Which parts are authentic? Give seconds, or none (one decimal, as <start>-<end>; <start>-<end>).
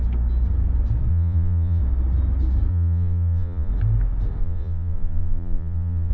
0.0-1.1; 1.8-2.7; 3.7-4.4